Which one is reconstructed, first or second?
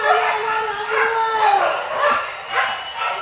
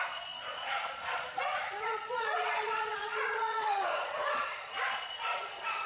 second